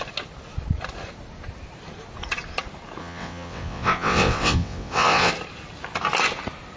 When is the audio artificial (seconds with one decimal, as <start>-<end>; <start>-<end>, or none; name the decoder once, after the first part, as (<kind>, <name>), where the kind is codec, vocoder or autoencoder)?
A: 3.0-5.3 (vocoder, WaveNeXt)

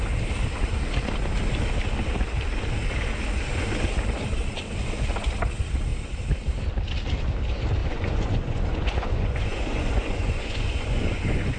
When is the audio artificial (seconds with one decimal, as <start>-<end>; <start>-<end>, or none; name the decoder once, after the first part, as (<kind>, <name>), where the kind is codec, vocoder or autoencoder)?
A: 7.8-11.6 (vocoder, Vocos)

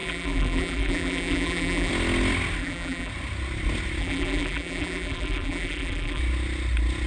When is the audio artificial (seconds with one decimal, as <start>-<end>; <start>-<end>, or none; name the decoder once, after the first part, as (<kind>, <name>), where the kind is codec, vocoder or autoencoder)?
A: 0.0-1.9 (vocoder, BigVGAN v2); 2.6-3.1; 4.0-6.2

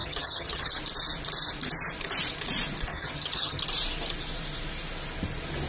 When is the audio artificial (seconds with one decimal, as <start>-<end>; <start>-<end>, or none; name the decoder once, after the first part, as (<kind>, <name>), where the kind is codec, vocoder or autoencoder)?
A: 0.0-0.8 (vocoder, HiFi-GAN); 2.9-3.6